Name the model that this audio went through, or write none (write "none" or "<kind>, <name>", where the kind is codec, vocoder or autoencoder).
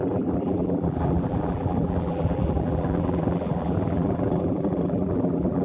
vocoder, BigVGAN v2